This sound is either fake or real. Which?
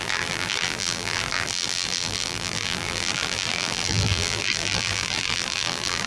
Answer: fake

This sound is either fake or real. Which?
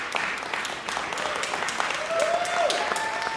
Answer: real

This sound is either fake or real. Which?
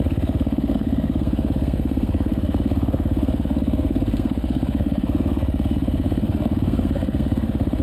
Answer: fake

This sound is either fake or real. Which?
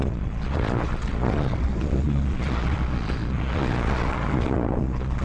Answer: fake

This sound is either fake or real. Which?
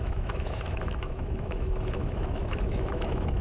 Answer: fake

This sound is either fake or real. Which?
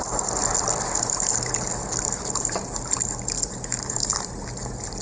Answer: real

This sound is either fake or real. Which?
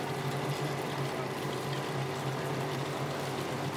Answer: real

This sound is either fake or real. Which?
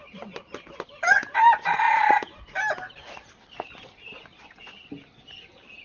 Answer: real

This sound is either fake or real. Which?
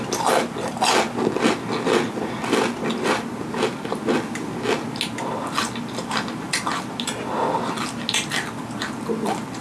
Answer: real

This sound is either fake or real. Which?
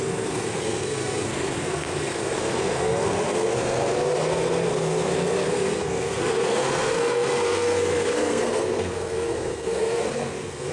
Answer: fake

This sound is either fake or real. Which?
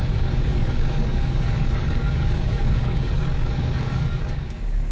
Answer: fake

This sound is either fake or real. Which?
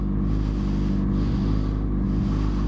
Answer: real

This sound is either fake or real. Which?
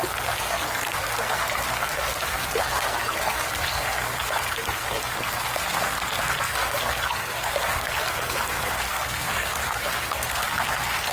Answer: fake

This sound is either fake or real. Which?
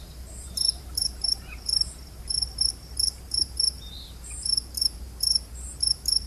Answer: fake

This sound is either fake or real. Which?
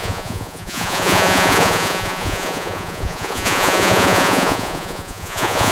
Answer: fake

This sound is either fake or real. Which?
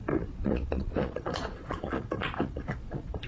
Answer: fake